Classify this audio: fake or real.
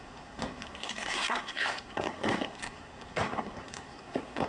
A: fake